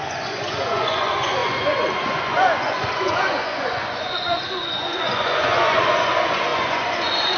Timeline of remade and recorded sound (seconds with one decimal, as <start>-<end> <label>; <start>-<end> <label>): 0.0-7.4 remade